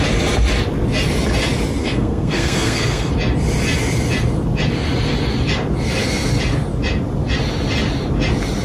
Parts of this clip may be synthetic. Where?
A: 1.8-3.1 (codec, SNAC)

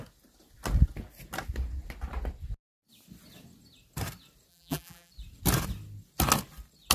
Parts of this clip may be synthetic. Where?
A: 4.5-5.1 (vocoder, BigVGAN v2)

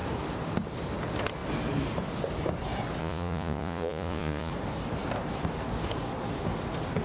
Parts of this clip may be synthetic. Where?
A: 3.0-4.5 (vocoder, Vocos)

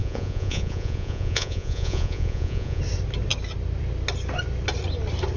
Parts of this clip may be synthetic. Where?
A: 0.0-2.8 (vocoder, Vocos)